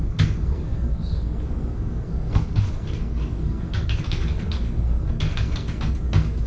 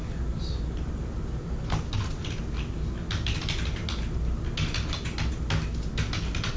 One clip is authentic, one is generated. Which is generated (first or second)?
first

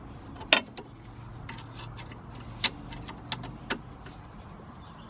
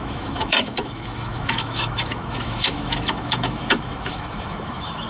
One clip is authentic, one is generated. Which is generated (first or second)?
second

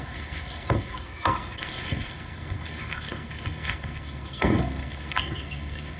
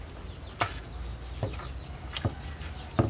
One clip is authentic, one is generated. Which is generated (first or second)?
first